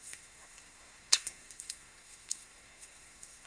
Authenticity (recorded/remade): remade